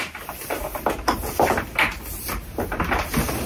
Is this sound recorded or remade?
recorded